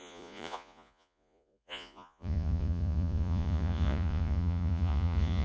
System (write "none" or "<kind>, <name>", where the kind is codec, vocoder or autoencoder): vocoder, Vocos